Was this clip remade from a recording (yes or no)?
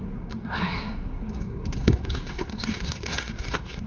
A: yes